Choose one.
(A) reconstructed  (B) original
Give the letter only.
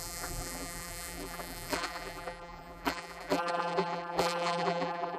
A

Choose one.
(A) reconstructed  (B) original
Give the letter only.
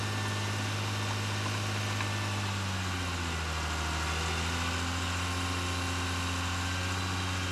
B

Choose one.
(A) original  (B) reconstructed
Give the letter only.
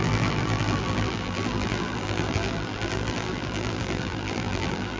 B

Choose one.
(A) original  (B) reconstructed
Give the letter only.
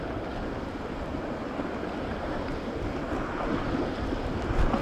A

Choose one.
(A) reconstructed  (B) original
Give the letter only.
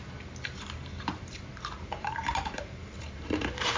A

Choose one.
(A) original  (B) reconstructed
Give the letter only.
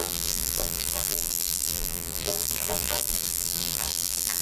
B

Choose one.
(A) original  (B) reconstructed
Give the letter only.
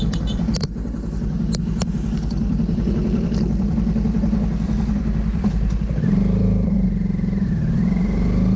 B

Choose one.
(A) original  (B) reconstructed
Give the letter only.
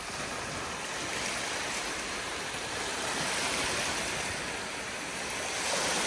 A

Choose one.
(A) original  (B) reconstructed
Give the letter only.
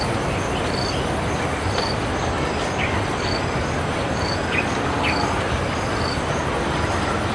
A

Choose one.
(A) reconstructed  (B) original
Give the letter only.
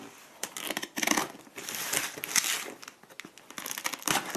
B